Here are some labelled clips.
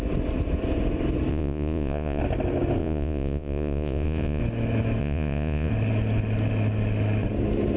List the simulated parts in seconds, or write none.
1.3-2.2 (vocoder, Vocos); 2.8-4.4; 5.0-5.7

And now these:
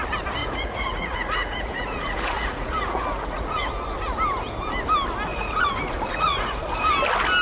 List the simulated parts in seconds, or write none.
0.4-3.7 (vocoder, Vocos); 5.3-6.6

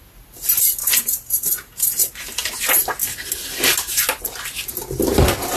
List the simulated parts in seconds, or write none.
0.8-2.1 (vocoder, Vocos)

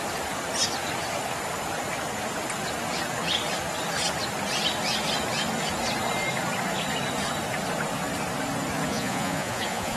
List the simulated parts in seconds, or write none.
8.9-10.0 (vocoder, Vocos)